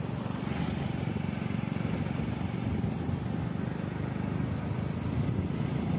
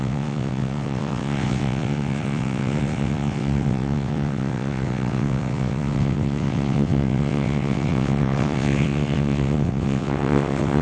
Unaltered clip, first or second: first